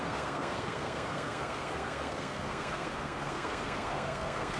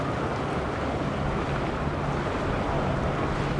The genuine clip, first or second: second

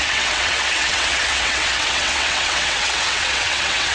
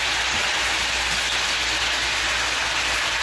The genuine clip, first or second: second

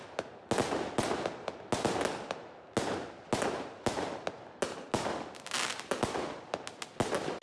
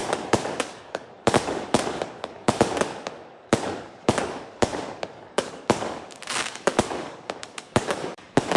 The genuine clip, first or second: first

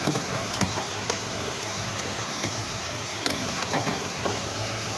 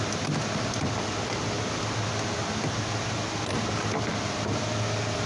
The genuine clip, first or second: second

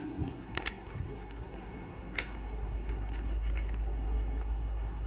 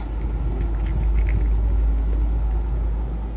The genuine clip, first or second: second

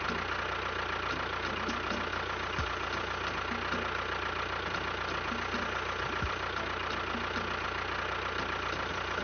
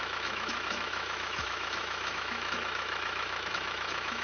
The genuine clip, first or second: first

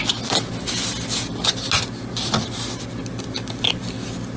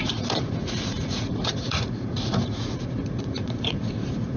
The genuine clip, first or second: first